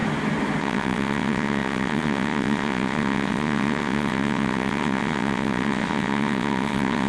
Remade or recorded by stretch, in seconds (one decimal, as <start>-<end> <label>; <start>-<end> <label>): 0.0-0.6 recorded; 0.6-7.1 remade